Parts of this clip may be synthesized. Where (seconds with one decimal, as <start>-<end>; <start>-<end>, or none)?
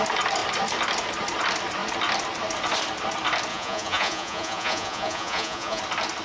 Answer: 3.5-5.8